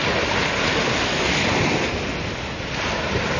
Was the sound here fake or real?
real